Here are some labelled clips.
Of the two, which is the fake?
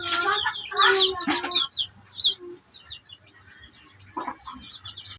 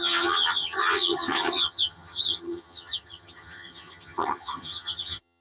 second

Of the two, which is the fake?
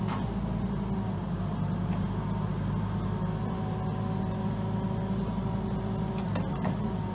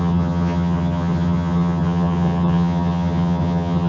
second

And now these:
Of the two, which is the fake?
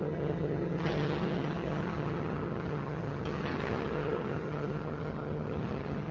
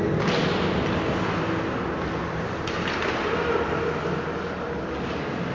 first